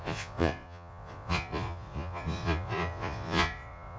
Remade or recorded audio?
remade